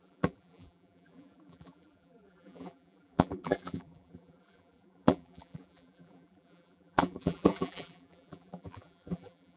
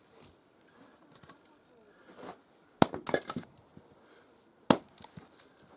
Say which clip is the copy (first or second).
first